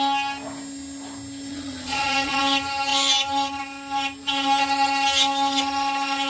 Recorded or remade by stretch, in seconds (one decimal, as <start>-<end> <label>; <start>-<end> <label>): 0.0-1.5 recorded; 1.5-2.4 remade; 2.4-6.3 recorded